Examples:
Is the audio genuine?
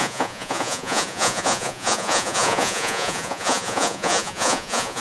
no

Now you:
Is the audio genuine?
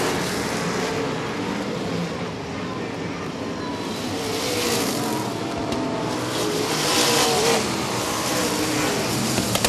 yes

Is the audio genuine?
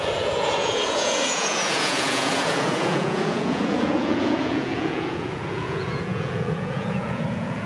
no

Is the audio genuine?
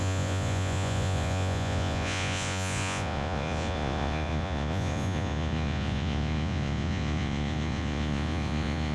no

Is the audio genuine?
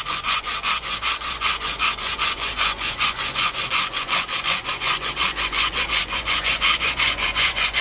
no